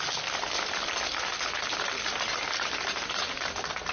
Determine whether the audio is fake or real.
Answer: real